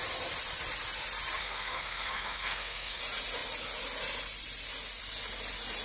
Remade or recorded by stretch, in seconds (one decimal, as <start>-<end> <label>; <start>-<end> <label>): 0.0-1.4 recorded; 1.4-3.0 remade; 3.0-5.8 recorded